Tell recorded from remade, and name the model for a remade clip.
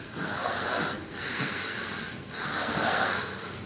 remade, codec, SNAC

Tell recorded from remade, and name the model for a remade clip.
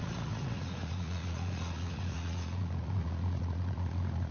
remade, vocoder, Vocos